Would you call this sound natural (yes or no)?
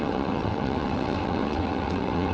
no